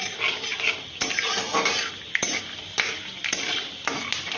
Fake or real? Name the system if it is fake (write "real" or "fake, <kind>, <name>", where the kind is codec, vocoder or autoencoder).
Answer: real